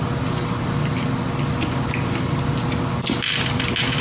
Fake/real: real